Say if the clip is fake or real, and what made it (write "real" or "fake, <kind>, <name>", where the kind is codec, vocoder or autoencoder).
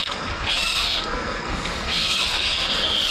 fake, codec, SNAC